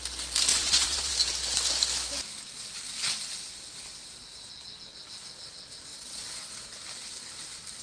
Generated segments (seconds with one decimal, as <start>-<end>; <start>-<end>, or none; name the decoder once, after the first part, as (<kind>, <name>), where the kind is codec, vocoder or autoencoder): 0.5-1.1 (vocoder, WaveNeXt); 5.9-6.5